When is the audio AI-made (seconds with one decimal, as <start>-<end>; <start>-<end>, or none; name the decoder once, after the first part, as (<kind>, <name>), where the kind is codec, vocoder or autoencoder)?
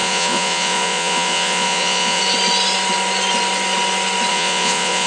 0.0-2.2 (vocoder, Vocos); 4.3-5.1